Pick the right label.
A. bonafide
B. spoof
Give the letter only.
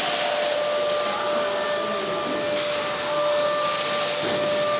A